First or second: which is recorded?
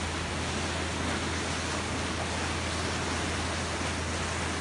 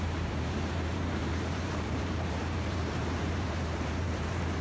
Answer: first